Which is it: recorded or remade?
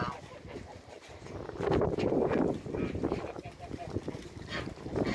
recorded